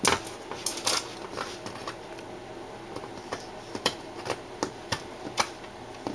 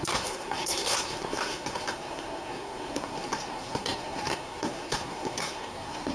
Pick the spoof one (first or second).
second